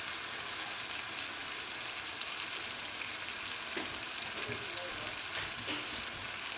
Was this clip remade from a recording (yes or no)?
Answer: no